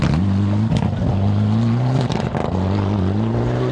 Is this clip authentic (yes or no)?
yes